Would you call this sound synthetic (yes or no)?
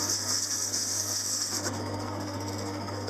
yes